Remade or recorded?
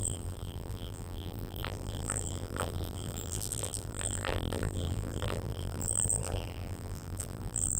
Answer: remade